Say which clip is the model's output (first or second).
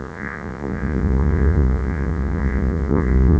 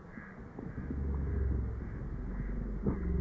first